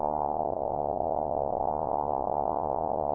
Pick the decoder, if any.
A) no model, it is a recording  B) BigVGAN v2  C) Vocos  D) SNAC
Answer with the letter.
C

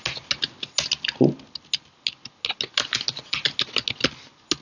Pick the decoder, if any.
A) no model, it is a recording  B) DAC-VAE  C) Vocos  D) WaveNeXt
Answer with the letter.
A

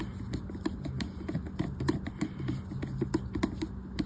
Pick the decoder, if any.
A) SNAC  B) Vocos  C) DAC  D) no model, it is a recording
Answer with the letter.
D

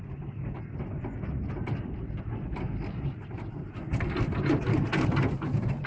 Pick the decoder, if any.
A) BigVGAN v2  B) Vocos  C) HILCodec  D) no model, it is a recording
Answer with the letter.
D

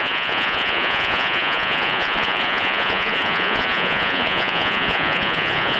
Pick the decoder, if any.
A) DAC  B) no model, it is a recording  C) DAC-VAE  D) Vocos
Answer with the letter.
D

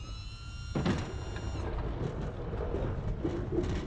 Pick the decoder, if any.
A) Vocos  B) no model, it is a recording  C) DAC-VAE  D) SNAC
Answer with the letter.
B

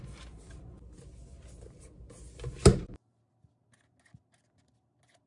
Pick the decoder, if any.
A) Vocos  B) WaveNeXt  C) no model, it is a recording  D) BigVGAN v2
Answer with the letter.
C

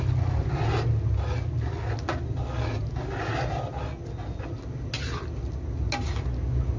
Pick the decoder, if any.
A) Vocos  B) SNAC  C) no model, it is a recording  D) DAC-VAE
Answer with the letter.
C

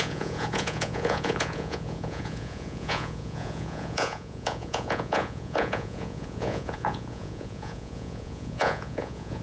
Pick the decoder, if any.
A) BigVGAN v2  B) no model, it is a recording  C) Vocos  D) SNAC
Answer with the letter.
C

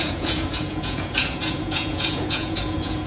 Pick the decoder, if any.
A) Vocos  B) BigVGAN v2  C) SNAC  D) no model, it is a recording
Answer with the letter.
A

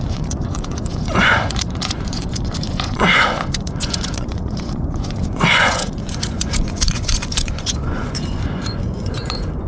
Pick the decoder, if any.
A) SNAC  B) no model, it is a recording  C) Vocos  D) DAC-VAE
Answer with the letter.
C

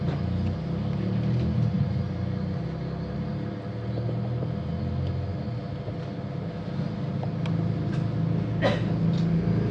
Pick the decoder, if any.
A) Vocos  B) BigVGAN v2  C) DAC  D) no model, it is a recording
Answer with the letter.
D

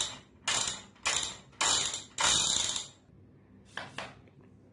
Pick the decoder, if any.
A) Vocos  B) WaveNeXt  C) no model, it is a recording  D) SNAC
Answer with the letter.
C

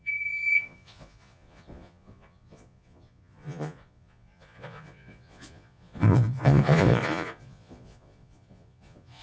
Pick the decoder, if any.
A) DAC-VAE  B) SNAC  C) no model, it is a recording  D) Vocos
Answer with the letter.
D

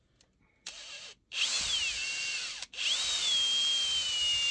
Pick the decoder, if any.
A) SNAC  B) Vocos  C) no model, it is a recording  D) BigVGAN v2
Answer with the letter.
C